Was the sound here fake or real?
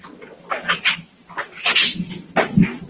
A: real